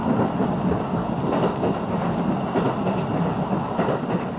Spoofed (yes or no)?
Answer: no